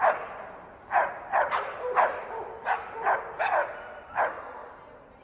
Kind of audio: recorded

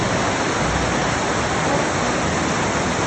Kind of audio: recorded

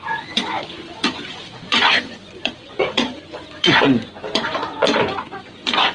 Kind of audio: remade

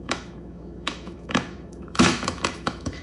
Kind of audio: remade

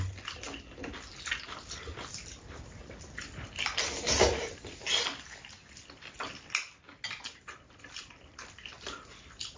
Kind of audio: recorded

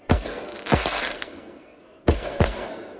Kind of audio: remade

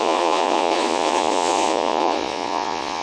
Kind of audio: remade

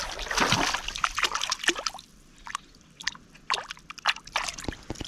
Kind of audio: recorded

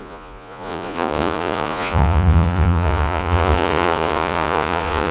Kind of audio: remade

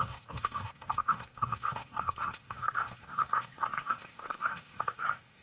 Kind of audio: remade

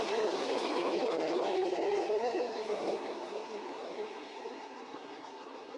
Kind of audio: remade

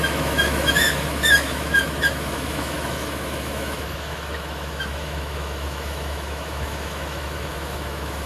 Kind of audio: remade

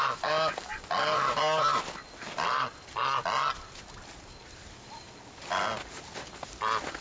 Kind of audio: recorded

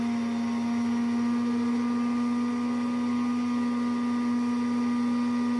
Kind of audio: recorded